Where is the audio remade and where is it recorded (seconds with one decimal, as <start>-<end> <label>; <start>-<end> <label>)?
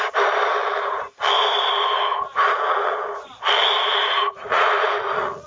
0.0-2.1 recorded; 2.1-2.9 remade; 2.9-3.8 recorded; 3.8-5.5 remade